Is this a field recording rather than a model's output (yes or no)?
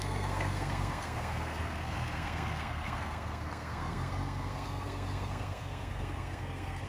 no